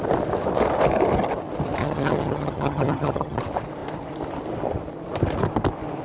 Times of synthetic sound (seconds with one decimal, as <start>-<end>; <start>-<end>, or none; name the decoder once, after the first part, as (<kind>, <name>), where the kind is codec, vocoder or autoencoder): 1.8-3.4 (vocoder, HiFi-GAN)